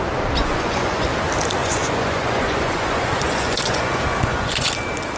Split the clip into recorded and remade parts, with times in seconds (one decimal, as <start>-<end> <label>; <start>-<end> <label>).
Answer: 0.0-0.4 recorded; 0.4-1.1 remade; 1.1-1.6 recorded; 1.6-4.7 remade; 4.7-5.2 recorded